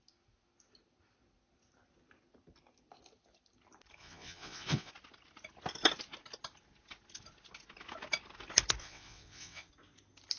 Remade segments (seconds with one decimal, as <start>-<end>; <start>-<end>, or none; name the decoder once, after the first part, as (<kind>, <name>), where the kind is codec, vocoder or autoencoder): 4.0-4.9 (vocoder, WaveNeXt); 8.8-9.7